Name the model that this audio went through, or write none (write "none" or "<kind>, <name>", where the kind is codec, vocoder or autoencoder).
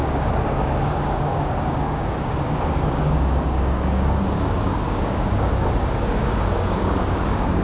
codec, DAC